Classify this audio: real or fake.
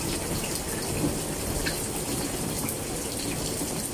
real